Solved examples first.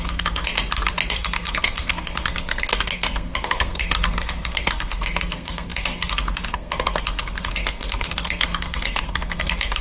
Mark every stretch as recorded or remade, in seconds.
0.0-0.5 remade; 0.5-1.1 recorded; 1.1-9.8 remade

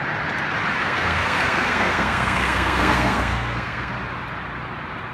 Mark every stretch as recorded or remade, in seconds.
0.0-0.8 recorded; 0.8-3.9 remade; 3.9-5.1 recorded

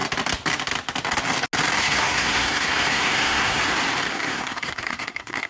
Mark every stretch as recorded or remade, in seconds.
0.0-1.8 recorded; 1.8-3.6 remade; 3.6-4.1 recorded; 4.1-5.5 remade

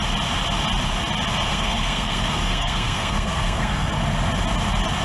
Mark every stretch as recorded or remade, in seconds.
0.0-1.5 recorded; 1.5-3.9 remade; 3.9-5.0 recorded